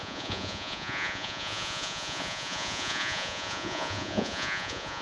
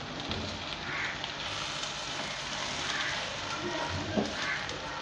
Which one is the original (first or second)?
second